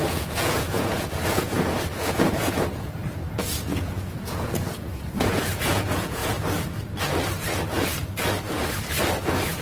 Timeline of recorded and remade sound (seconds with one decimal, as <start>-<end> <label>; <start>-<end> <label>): 0.0-6.2 remade; 6.2-9.2 recorded; 9.2-9.6 remade